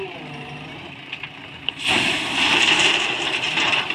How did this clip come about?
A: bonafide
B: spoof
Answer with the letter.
B